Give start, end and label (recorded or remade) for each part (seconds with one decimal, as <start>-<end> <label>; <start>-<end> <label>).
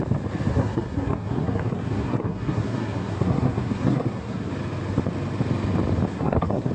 0.0-0.5 recorded; 0.5-4.5 remade; 4.5-6.1 recorded; 6.1-6.7 remade